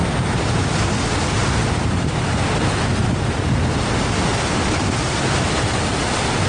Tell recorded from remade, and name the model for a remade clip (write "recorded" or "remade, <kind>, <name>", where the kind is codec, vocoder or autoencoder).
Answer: recorded